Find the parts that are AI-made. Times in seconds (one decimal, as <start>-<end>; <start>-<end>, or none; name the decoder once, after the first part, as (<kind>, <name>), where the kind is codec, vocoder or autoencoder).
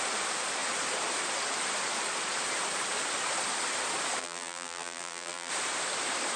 4.2-5.5 (vocoder, BigVGAN v2)